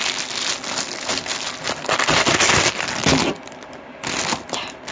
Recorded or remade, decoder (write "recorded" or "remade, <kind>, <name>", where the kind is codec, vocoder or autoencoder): recorded